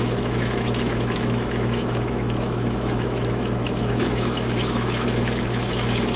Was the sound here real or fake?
fake